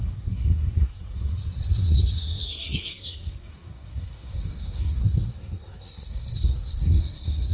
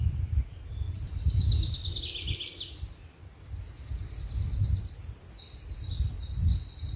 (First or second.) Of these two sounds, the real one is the second